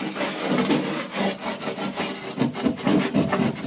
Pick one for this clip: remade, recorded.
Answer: recorded